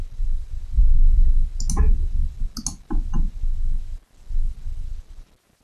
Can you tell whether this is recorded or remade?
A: recorded